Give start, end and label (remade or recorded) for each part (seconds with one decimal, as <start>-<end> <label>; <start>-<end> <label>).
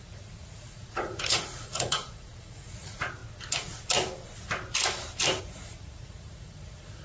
0.0-3.2 remade; 3.2-5.4 recorded; 5.4-7.0 remade